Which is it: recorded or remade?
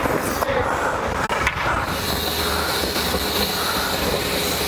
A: recorded